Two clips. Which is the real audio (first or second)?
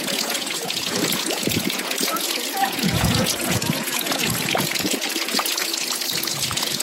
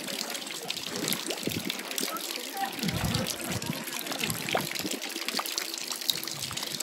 second